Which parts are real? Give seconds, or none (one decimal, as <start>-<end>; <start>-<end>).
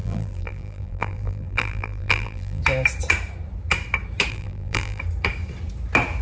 2.6-4.3; 5.0-6.2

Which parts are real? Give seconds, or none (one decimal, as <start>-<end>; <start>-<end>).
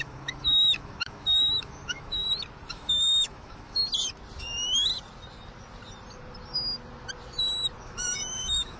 2.2-2.7; 3.8-4.4; 4.9-7.8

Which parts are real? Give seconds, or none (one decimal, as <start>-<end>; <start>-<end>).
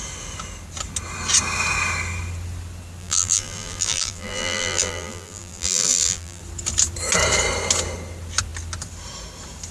0.0-3.0; 6.4-9.7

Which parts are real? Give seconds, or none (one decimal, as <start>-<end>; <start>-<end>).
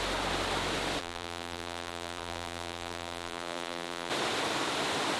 0.0-1.0; 4.1-5.2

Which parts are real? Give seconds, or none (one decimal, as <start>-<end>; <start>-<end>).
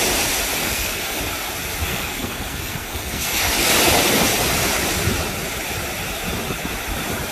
0.0-0.6; 1.2-1.9; 3.7-7.3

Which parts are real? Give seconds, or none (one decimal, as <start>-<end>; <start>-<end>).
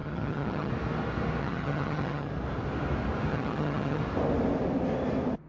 0.7-1.4; 2.3-3.3; 4.0-5.5